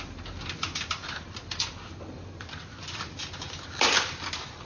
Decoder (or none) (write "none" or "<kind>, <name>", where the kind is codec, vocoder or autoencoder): none